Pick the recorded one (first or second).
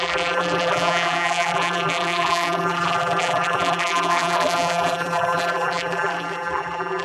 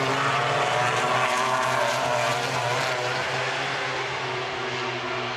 second